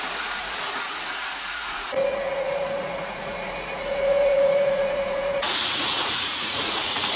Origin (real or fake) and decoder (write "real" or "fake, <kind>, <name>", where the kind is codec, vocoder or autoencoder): fake, vocoder, Vocos